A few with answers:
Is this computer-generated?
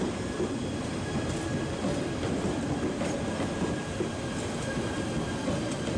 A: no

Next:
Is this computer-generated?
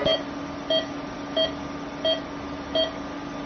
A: no